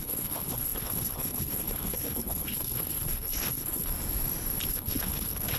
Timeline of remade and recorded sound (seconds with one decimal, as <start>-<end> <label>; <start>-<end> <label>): 0.0-3.9 remade; 3.9-4.7 recorded; 4.7-5.6 remade